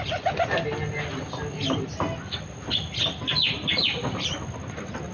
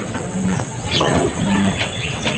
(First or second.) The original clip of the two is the first